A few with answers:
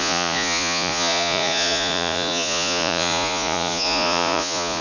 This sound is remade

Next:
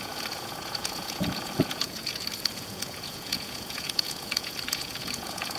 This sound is remade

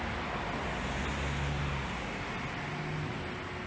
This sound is recorded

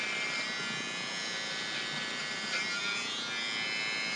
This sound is recorded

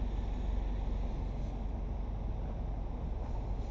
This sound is recorded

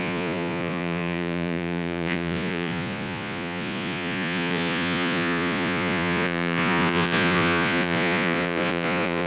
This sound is remade